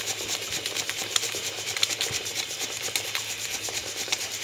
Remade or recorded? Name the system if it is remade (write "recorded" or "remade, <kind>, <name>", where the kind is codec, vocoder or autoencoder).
remade, vocoder, BigVGAN v2